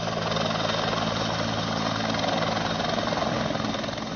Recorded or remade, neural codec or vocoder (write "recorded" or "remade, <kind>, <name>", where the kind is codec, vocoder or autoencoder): recorded